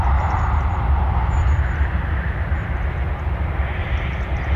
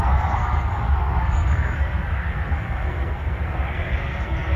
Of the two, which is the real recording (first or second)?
first